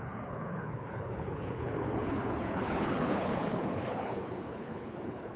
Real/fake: fake